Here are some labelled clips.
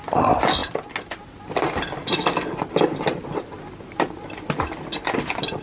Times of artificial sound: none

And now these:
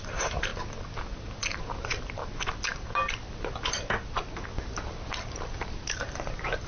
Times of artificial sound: 0.0-0.5 (vocoder, BigVGAN v2); 1.6-2.2; 5.6-6.7

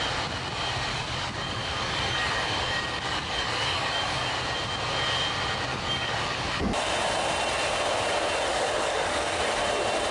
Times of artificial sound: 0.9-4.3 (codec, DAC); 5.7-6.6; 8.5-9.4

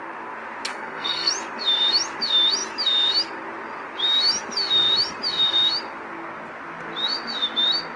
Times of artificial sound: 0.7-1.3 (codec, SNAC)

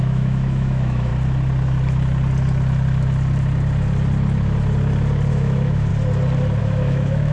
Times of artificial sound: 0.0-1.1 (autoencoder, DAC-VAE); 5.3-5.9; 6.6-7.3